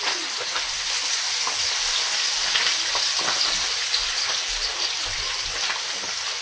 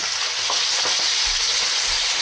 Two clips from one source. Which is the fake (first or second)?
first